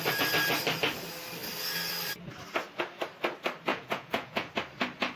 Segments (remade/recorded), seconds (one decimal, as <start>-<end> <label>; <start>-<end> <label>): 0.0-3.7 recorded; 3.7-4.5 remade; 4.5-5.2 recorded